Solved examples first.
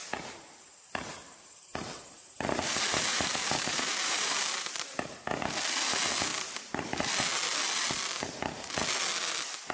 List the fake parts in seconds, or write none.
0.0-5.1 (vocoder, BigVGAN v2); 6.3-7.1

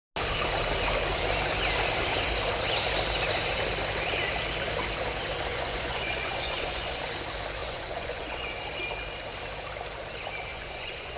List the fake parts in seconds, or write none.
5.5-7.0 (vocoder, Vocos); 7.6-8.5; 10.5-11.2

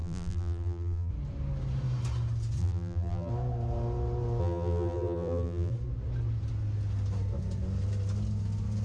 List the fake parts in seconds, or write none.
0.0-1.1 (vocoder, BigVGAN v2); 2.6-3.3; 4.4-5.7

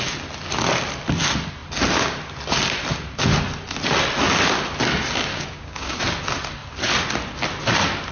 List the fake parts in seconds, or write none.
5.3-6.0 (codec, DAC)

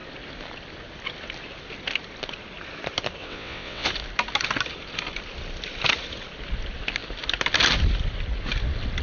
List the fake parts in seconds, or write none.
3.2-3.9 (vocoder, WaveNeXt)

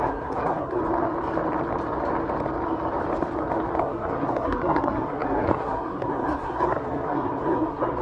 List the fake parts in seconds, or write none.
0.0-0.8 (codec, SNAC); 3.8-8.0

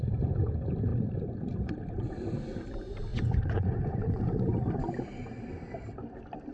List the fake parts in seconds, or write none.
3.1-4.2 (vocoder, Vocos)

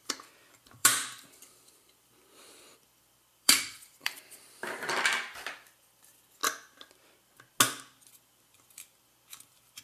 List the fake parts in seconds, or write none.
0.0-6.4 (vocoder, BigVGAN v2)